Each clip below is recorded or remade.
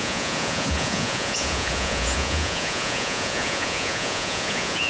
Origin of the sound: remade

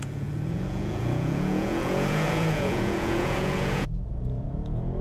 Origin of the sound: remade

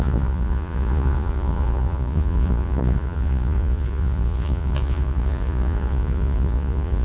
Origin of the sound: remade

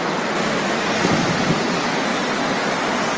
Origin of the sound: recorded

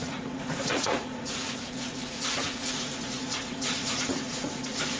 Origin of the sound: remade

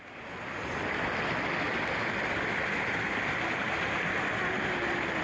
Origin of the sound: recorded